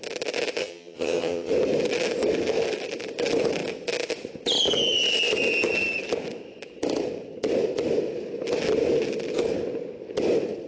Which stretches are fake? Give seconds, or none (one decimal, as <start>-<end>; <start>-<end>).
0.6-1.5